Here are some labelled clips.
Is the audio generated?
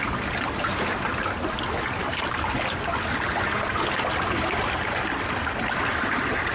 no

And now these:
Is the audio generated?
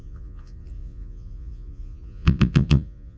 yes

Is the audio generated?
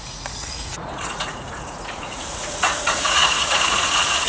yes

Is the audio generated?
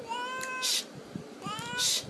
no